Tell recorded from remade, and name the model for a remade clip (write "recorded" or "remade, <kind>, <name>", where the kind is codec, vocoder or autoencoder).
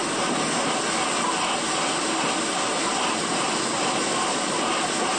recorded